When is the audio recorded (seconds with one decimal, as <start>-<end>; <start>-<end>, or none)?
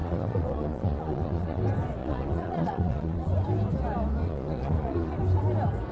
1.6-2.0; 3.3-4.2; 5.2-5.9